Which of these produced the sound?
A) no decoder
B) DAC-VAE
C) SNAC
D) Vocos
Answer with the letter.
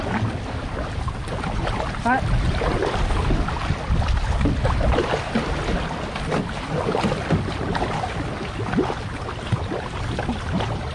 A